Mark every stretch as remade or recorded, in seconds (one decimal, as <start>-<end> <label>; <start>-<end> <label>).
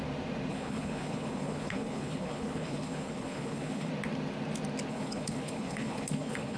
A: 0.0-0.5 recorded; 0.5-3.9 remade; 3.9-4.9 recorded; 4.9-6.6 remade